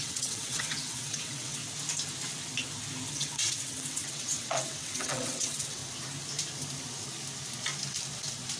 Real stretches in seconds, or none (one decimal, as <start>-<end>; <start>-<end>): 1.6-3.1; 5.8-8.6